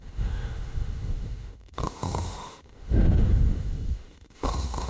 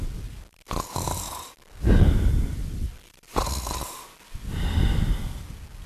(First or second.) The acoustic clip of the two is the second